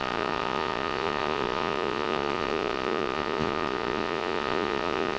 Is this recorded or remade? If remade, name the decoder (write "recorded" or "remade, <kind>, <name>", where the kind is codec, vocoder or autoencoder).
remade, vocoder, Vocos